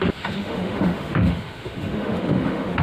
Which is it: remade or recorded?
remade